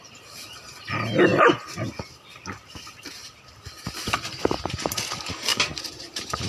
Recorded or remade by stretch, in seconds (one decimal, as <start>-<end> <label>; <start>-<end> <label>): 0.0-5.5 recorded; 5.5-6.5 remade